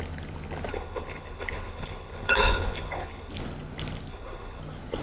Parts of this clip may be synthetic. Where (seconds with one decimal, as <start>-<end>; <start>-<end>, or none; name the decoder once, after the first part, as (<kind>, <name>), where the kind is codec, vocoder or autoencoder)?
0.7-3.3 (codec, HILCodec); 4.1-4.6